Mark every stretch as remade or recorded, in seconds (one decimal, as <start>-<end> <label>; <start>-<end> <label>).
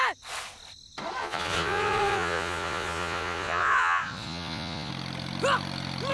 0.0-1.2 recorded; 1.2-4.9 remade; 4.9-6.1 recorded